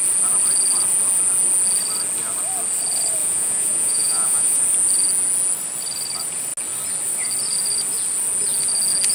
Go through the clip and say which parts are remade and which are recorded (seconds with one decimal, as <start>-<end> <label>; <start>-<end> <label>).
0.0-3.2 recorded; 3.2-4.6 remade; 4.6-9.1 recorded

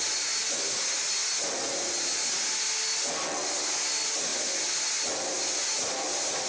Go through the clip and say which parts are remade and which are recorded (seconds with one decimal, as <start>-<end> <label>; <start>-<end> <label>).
0.0-6.5 recorded

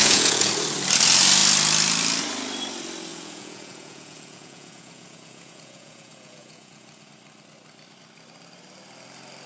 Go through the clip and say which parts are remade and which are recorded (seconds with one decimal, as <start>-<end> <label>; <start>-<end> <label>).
0.0-0.5 remade; 0.5-3.1 recorded; 3.1-7.1 remade; 7.1-9.5 recorded

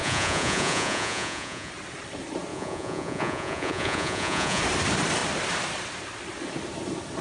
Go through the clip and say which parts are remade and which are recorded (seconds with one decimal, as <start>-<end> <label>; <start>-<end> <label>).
0.0-1.7 remade; 1.7-2.5 recorded; 2.5-4.6 remade; 4.6-7.2 recorded

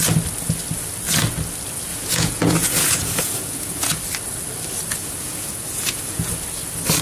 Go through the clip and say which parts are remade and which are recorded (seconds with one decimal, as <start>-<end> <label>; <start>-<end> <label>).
0.0-1.9 recorded; 1.9-4.0 remade; 4.0-5.0 recorded; 5.0-6.3 remade; 6.3-7.0 recorded